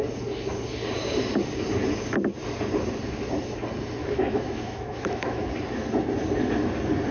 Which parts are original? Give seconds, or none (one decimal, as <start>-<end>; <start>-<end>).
0.0-4.0; 5.5-7.1